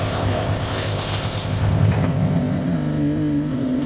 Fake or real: fake